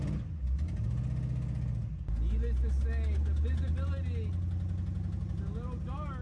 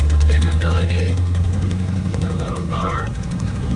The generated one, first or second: second